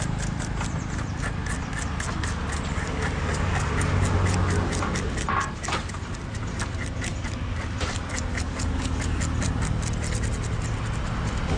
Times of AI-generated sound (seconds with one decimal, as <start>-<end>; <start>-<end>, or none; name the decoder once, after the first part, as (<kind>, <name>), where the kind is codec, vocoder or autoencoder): 2.7-3.7 (codec, DAC); 8.3-9.2